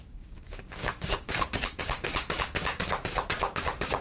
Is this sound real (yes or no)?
no